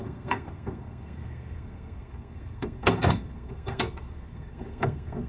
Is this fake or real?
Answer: fake